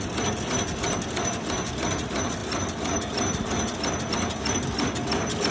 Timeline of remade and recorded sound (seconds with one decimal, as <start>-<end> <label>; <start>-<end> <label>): 0.0-5.5 recorded